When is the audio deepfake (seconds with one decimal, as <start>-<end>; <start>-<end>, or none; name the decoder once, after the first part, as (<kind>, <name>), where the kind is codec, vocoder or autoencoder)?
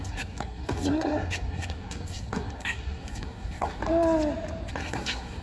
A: 0.0-3.8 (codec, SNAC); 4.7-5.4